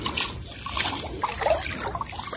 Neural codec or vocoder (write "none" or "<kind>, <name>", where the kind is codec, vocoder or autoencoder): none